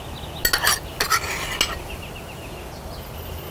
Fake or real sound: real